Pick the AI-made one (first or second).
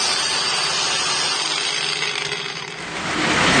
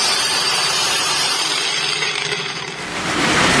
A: second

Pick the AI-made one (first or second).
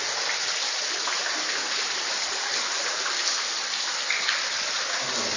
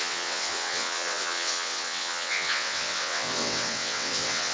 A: second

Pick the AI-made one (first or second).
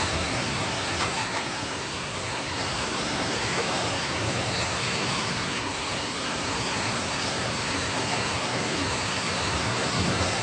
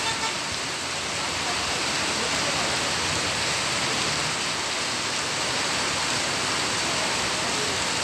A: first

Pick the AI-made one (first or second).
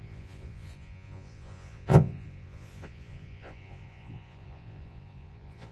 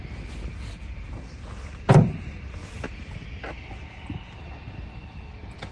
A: first